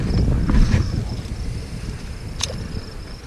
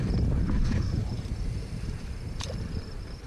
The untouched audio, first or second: first